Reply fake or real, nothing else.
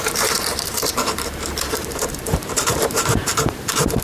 fake